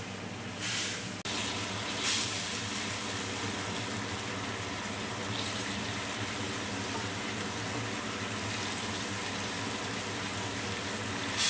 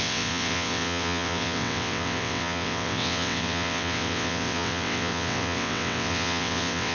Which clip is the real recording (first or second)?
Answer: first